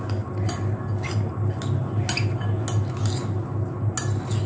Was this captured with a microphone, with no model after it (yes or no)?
yes